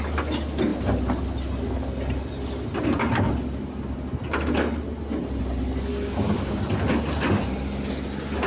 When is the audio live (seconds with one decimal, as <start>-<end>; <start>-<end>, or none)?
0.0-5.9; 6.6-8.5